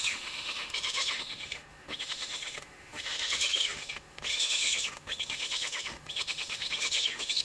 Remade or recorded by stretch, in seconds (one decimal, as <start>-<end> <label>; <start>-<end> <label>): 0.0-7.4 remade